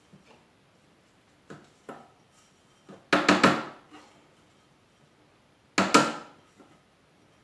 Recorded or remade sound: recorded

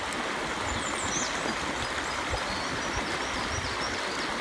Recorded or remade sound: recorded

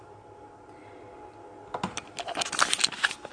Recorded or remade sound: recorded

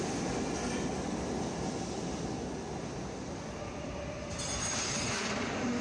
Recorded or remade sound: recorded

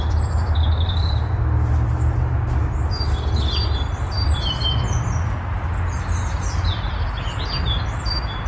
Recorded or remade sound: recorded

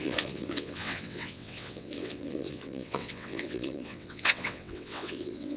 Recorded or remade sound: remade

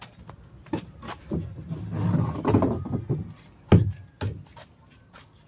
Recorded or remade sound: recorded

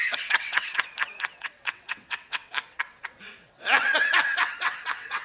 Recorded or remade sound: remade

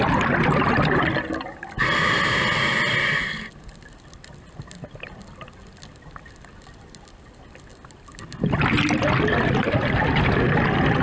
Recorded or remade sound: recorded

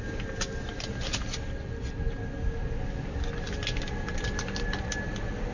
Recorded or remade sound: recorded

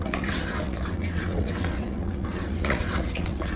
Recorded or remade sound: remade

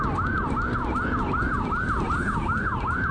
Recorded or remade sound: recorded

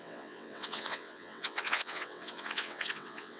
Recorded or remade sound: remade